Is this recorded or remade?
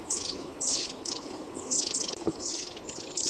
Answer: remade